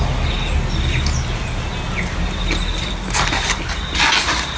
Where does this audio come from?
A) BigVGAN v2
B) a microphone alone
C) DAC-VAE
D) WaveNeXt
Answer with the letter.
B